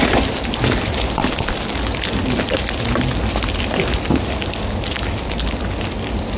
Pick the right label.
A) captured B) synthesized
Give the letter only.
A